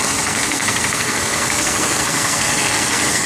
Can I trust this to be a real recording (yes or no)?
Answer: no